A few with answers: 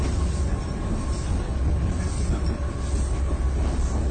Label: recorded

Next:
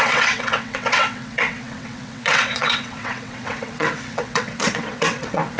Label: remade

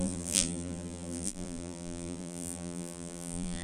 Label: remade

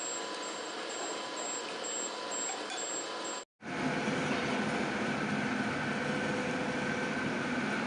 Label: recorded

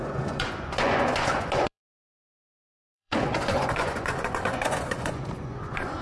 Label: remade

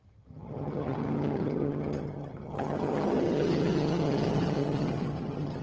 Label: remade